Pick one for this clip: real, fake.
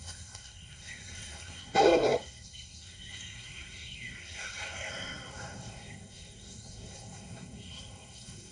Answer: fake